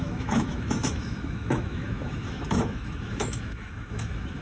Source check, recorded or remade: remade